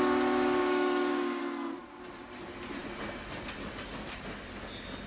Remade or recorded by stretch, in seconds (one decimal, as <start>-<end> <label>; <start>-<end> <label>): 0.0-0.6 recorded; 0.6-1.4 remade; 1.4-5.1 recorded